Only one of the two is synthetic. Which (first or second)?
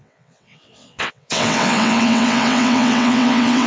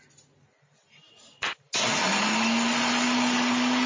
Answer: first